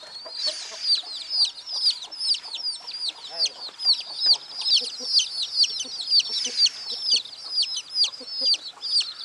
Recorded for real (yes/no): yes